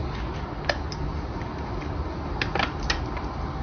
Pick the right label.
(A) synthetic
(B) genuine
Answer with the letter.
B